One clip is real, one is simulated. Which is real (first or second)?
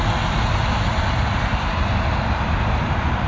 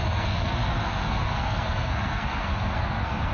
first